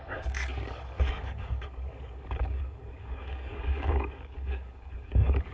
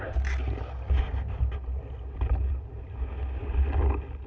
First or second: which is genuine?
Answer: second